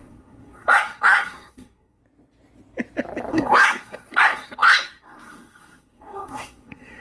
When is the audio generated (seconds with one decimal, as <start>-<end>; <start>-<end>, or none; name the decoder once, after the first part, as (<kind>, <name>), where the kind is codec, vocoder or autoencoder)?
0.0-2.0 (codec, SNAC); 3.3-7.0